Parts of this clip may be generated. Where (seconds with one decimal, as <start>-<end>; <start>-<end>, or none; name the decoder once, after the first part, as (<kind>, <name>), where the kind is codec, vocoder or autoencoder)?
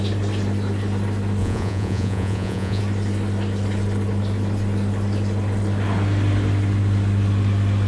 1.4-2.8 (vocoder, Vocos)